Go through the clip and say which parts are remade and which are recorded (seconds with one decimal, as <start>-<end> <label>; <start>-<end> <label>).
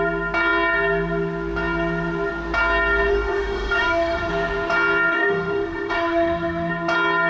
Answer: 0.0-3.1 recorded; 3.1-4.3 remade; 4.3-5.1 recorded; 5.1-6.7 remade; 6.7-7.3 recorded